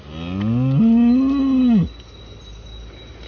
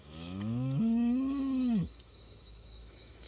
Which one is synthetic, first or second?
second